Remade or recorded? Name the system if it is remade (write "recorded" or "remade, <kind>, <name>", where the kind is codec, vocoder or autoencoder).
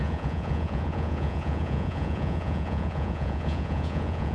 remade, vocoder, Vocos